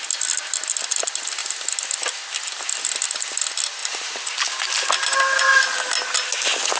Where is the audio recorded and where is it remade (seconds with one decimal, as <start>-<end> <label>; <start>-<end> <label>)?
0.0-6.8 recorded